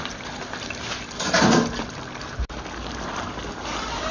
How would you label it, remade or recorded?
recorded